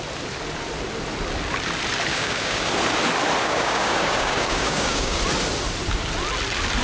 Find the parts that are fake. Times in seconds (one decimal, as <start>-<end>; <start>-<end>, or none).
2.1-2.7; 3.4-5.2